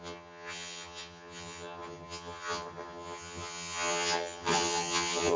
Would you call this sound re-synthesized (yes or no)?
yes